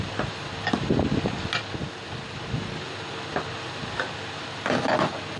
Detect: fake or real real